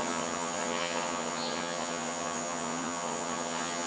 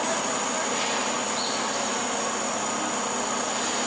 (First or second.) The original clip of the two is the second